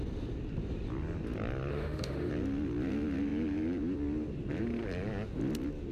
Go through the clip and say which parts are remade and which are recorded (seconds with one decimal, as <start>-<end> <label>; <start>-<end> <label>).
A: 0.0-1.7 recorded; 1.7-2.3 remade; 2.3-5.9 recorded